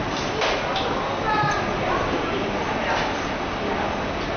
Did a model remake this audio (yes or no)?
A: no